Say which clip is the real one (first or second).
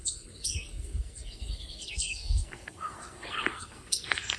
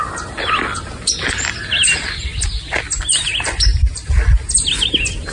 second